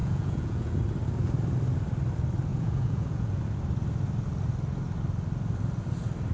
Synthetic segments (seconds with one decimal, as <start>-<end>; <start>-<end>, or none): 0.0-0.7; 2.5-3.4